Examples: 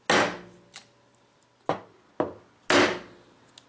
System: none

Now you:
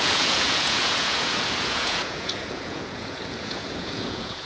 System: vocoder, Vocos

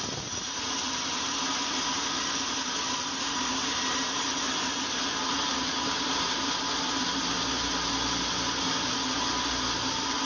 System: none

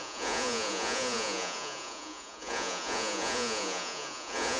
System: vocoder, Vocos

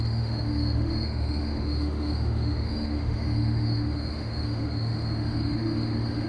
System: autoencoder, DAC-VAE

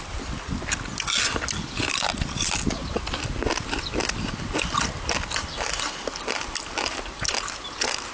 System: none